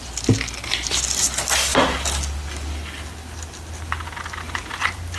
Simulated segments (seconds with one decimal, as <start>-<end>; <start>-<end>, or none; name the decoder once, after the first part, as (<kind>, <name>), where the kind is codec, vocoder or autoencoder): 0.0-1.7 (vocoder, BigVGAN v2); 4.8-5.2